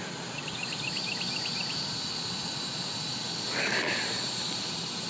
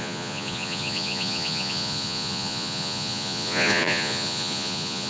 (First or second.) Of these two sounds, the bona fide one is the first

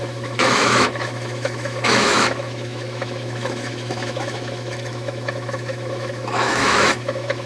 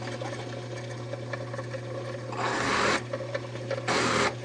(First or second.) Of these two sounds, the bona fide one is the second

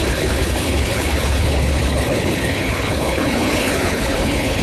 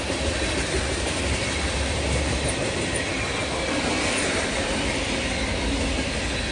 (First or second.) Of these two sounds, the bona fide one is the second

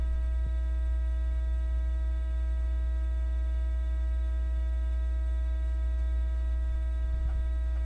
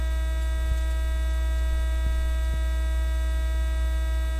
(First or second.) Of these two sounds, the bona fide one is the second